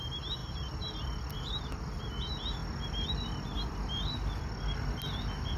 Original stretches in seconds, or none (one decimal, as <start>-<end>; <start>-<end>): 0.0-5.6